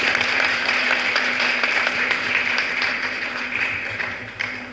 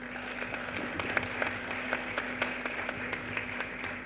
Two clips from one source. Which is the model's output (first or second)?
first